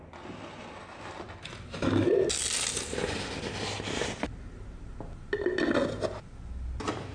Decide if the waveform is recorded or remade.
recorded